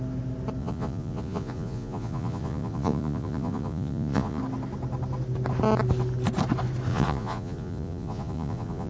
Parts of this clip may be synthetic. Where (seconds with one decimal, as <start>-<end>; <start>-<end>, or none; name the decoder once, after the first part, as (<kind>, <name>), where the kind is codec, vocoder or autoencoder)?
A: 0.6-4.4 (vocoder, Vocos); 6.9-8.9